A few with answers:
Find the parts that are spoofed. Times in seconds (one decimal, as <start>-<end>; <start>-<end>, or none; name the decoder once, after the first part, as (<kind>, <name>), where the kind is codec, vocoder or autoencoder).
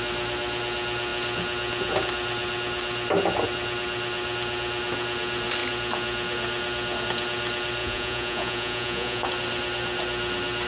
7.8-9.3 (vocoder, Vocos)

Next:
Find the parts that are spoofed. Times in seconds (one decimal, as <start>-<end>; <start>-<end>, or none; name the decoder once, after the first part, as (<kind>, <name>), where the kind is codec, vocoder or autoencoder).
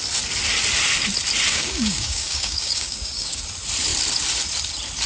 1.5-3.4 (codec, DAC)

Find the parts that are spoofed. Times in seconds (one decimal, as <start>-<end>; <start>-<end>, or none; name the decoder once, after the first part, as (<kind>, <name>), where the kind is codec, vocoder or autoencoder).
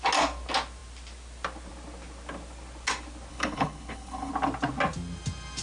3.3-4.3 (codec, HILCodec)